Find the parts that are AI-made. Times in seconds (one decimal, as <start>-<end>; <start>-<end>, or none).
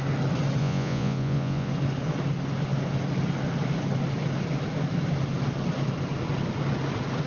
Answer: 0.6-1.7